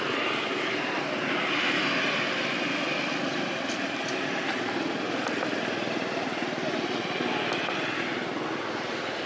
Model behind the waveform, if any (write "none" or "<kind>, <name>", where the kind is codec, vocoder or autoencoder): none